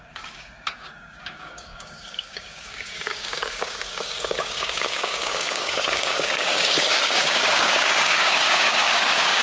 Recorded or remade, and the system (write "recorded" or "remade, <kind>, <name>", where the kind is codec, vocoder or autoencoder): remade, codec, DAC